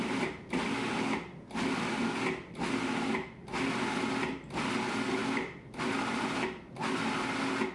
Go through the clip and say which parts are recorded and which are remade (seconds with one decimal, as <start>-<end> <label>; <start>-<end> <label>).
0.0-7.7 recorded